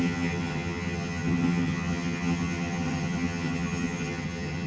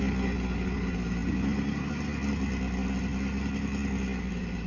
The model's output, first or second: first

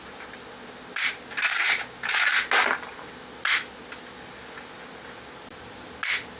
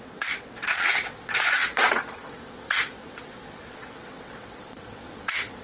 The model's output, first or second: second